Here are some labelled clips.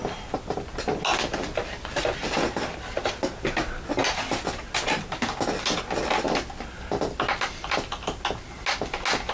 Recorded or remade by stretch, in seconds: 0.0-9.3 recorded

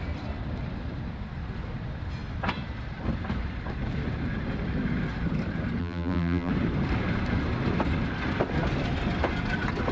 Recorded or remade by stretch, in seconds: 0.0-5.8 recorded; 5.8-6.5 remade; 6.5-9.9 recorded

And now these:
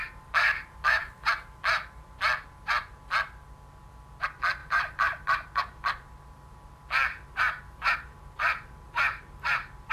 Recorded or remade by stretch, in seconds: 0.0-1.3 remade; 1.3-4.6 recorded; 4.6-9.9 remade

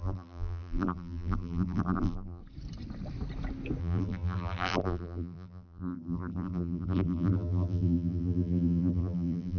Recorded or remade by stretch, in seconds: 0.0-2.4 remade; 2.4-3.8 recorded; 3.8-9.6 remade

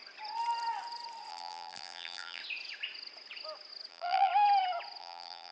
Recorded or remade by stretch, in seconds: 0.0-1.3 recorded; 1.3-2.4 remade; 2.4-3.9 recorded; 3.9-4.3 remade; 4.3-5.0 recorded; 5.0-5.5 remade